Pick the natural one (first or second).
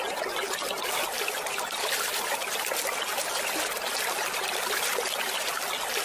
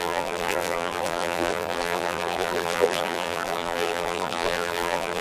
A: first